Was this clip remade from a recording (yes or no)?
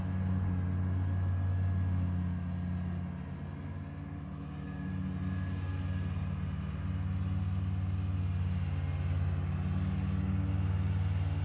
no